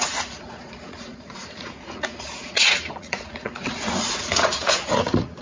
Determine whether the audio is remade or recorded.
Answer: remade